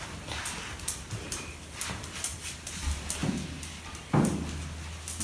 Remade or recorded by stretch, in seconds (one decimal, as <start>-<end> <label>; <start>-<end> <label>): 0.0-5.2 recorded